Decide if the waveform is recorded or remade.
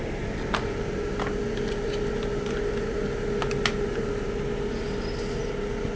recorded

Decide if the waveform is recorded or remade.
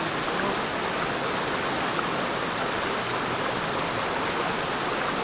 recorded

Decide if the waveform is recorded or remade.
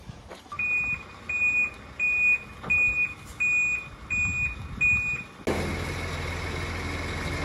recorded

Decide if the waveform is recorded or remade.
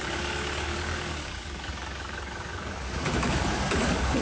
remade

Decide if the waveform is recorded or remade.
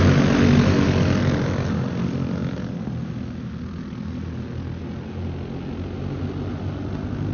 recorded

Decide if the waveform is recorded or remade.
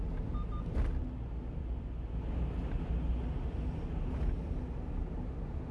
recorded